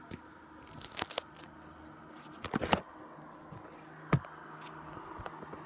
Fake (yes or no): no